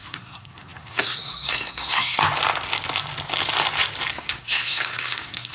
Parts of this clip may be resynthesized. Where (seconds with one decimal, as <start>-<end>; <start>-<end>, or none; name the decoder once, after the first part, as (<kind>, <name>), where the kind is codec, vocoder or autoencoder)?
0.0-2.2 (codec, SNAC); 4.1-5.5